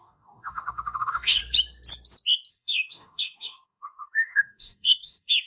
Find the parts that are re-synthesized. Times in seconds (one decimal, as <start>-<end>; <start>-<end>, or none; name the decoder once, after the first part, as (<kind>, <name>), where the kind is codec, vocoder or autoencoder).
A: 0.0-1.4 (codec, DAC); 2.5-5.5